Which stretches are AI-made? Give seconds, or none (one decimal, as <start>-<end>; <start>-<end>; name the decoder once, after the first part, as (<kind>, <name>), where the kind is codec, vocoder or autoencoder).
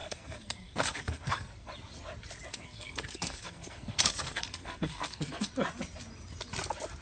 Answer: 0.0-1.7 (codec, SNAC); 2.5-5.5